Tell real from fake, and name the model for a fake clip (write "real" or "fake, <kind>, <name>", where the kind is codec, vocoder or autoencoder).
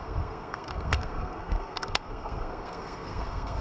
fake, codec, SNAC